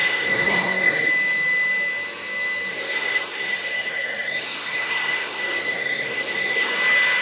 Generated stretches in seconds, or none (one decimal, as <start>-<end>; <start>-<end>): 0.0-1.1; 2.7-6.7